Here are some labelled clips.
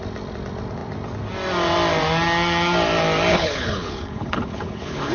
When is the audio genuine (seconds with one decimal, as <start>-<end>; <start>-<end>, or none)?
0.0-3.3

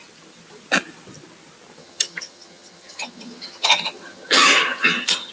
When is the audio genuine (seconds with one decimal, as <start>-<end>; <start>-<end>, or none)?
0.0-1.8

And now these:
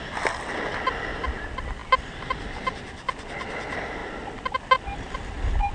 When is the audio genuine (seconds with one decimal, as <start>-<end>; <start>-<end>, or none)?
0.0-5.7

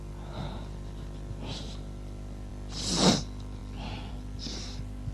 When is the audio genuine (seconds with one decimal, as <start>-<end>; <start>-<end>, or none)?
0.0-5.1